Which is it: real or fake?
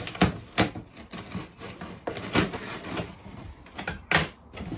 real